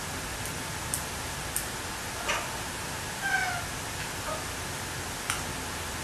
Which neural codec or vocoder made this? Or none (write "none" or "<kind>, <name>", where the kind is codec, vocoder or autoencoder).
none